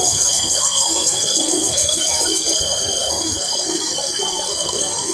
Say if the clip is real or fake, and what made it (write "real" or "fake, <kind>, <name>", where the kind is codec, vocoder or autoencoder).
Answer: fake, codec, SNAC